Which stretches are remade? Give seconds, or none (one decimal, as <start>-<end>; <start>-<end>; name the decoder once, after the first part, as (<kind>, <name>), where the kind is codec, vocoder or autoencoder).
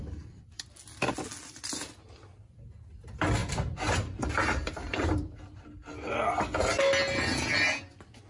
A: 3.4-5.4 (vocoder, BigVGAN v2)